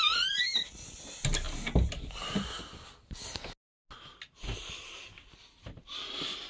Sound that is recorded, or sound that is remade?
recorded